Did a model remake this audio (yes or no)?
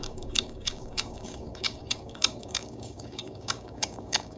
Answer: yes